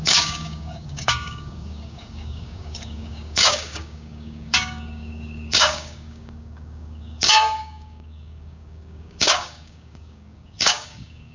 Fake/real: fake